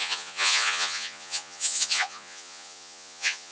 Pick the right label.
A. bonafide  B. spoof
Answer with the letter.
B